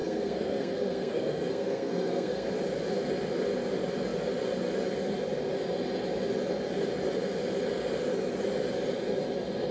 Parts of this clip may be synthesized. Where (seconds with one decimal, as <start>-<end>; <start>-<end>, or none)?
0.0-2.5